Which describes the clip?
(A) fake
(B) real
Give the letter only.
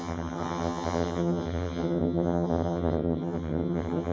A